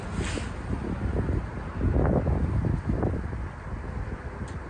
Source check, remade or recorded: recorded